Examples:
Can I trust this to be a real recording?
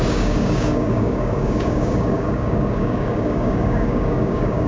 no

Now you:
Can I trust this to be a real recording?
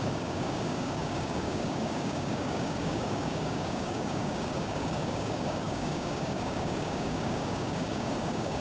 no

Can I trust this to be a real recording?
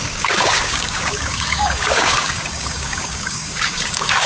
no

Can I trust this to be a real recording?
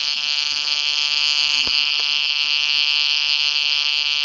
no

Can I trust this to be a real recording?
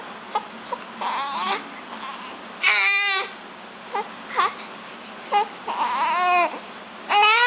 yes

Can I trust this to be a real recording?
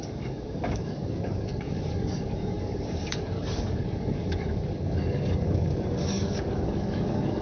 no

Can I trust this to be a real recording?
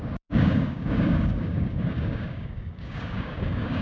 no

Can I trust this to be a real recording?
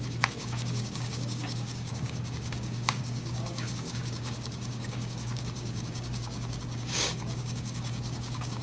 no